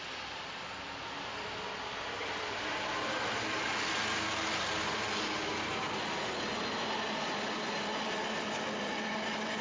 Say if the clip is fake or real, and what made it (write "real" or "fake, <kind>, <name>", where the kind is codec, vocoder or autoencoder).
real